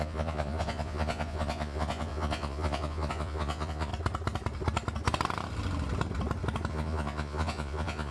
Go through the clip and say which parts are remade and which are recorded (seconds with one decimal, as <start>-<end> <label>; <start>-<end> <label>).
0.0-3.9 remade; 3.9-6.7 recorded; 6.7-8.1 remade